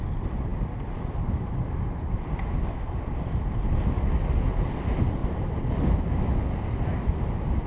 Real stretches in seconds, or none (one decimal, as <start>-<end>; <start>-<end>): 0.0-5.2; 5.8-7.7